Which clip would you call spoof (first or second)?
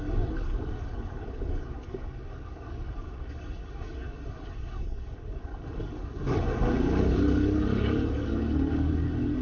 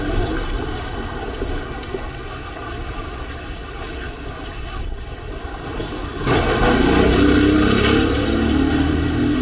first